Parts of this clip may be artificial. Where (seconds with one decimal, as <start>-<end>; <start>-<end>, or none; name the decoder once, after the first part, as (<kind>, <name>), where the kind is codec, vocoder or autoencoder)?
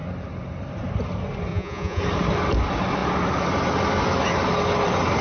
1.5-2.0 (vocoder, Vocos)